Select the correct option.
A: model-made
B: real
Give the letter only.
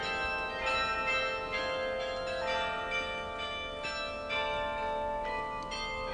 B